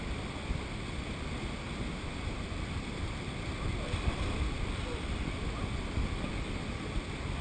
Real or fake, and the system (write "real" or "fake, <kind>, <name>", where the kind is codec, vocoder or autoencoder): real